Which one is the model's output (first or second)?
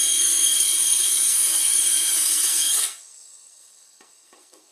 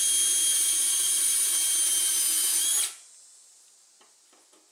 first